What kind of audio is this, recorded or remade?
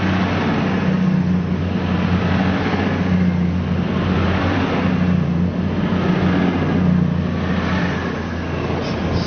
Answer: recorded